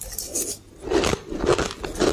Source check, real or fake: real